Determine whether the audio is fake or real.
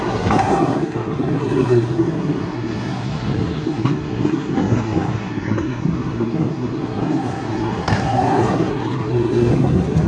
fake